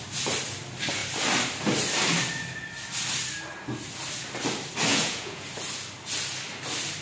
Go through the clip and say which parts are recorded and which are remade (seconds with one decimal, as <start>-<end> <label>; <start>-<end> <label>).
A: 0.0-4.9 recorded; 4.9-5.5 remade; 5.5-7.0 recorded

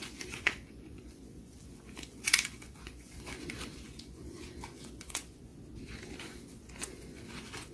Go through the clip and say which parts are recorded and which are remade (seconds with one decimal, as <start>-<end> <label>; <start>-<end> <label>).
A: 0.0-5.5 remade; 5.5-6.2 recorded; 6.2-7.7 remade

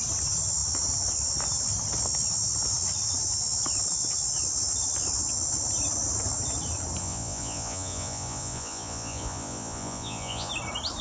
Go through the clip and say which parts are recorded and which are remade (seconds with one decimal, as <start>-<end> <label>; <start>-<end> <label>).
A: 0.0-7.0 recorded; 7.0-10.5 remade; 10.5-11.0 recorded

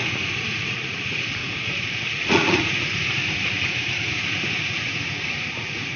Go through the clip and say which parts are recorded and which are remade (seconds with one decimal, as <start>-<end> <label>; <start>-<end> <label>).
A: 0.0-6.0 remade

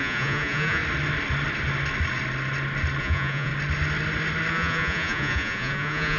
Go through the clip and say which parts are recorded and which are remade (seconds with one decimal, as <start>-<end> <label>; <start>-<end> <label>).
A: 0.0-0.8 remade; 0.8-3.0 recorded; 3.0-3.5 remade; 3.5-4.5 recorded; 4.5-6.2 remade

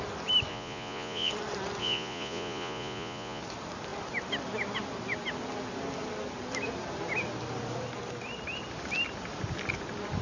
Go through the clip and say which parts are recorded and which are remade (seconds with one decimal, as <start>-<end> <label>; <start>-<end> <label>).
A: 0.0-0.5 recorded; 0.5-1.3 remade; 1.3-1.8 recorded; 1.8-3.4 remade; 3.4-10.2 recorded